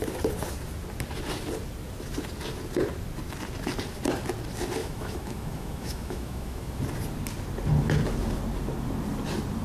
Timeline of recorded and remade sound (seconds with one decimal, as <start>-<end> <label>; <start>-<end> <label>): 0.0-4.8 recorded; 4.8-6.8 remade; 6.8-9.6 recorded